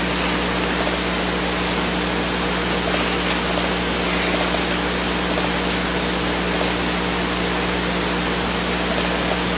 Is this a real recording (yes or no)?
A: yes